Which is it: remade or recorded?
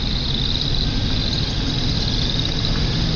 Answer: recorded